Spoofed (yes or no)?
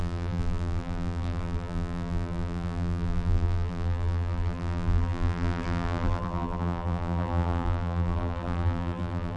yes